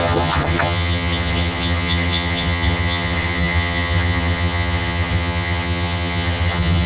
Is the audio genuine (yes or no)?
no